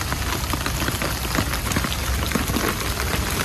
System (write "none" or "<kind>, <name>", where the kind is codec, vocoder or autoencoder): vocoder, BigVGAN v2